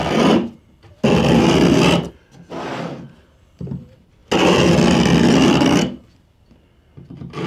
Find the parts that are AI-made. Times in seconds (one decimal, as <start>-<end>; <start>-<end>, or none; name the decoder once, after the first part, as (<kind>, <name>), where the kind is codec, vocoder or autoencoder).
none

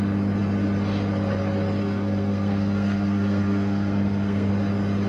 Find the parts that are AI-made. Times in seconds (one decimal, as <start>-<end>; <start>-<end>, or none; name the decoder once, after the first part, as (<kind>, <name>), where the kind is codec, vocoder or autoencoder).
1.8-4.5 (codec, SNAC)